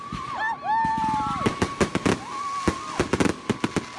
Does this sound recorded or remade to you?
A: recorded